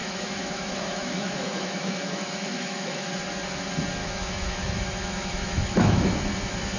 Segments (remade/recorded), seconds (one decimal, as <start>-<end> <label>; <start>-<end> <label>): 0.0-3.1 remade; 3.1-4.0 recorded; 4.0-6.1 remade; 6.1-6.8 recorded